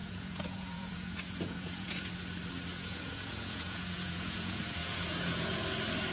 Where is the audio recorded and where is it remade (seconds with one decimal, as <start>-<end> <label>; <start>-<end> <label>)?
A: 0.0-2.1 remade; 2.1-2.7 recorded; 2.7-5.6 remade; 5.6-6.1 recorded